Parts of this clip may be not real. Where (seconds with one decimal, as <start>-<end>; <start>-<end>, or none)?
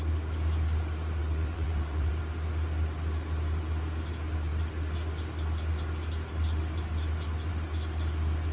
1.2-2.1